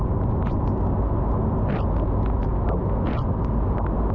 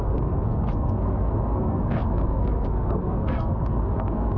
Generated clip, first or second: second